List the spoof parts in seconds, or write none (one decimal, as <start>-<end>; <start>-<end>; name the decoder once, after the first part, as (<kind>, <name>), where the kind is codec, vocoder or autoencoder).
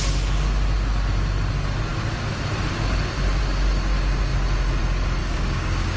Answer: 5.2-6.0 (codec, DAC)